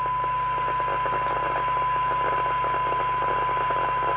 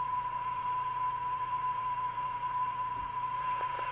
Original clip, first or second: first